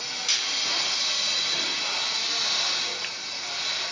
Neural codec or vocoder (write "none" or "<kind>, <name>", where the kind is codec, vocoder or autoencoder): none